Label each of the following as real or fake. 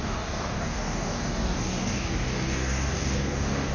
fake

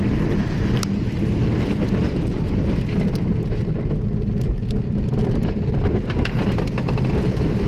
real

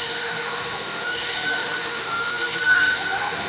fake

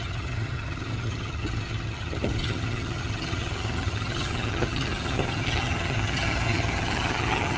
fake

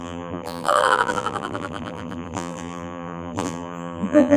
fake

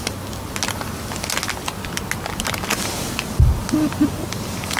real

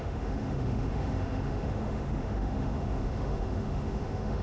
fake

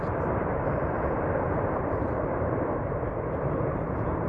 fake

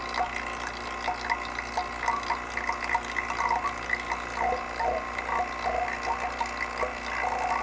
real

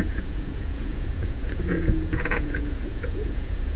fake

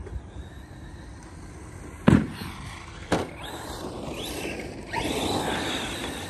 real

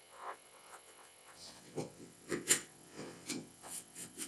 fake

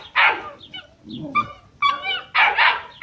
real